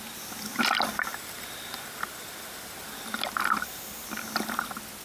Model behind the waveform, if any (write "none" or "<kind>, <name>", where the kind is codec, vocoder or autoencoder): none